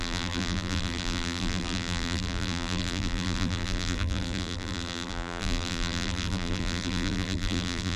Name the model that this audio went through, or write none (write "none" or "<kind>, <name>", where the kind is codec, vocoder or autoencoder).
vocoder, BigVGAN v2